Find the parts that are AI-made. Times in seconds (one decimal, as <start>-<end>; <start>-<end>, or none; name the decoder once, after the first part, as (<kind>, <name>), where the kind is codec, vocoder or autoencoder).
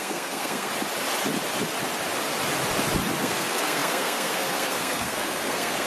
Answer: 0.0-0.7 (codec, SNAC); 3.2-5.9